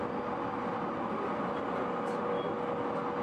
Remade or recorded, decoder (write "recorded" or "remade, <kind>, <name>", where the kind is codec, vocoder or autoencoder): recorded